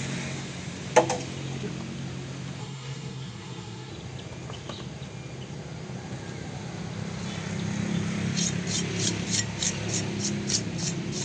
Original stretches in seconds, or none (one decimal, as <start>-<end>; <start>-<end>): 0.0-2.6; 3.9-11.2